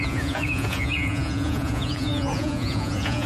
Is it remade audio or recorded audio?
remade